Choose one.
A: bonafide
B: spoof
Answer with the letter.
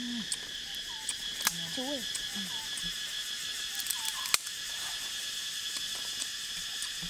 A